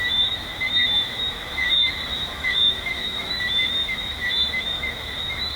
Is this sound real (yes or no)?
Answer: no